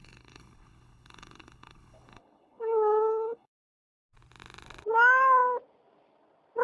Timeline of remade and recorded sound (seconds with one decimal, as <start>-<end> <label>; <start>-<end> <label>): 0.0-3.9 remade; 3.9-6.6 recorded